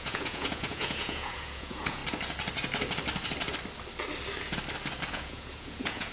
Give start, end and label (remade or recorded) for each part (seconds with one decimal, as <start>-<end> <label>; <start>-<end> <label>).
0.0-2.0 remade; 2.0-5.1 recorded; 5.1-6.1 remade